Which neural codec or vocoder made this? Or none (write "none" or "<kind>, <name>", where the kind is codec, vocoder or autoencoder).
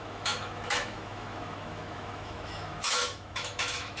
autoencoder, DAC-VAE